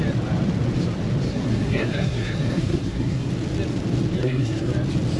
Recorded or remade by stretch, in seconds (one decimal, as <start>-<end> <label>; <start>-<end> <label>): 0.0-1.3 recorded; 1.3-3.3 remade; 3.3-4.2 recorded; 4.2-4.7 remade; 4.7-5.2 recorded